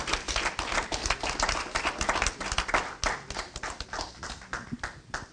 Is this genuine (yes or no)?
yes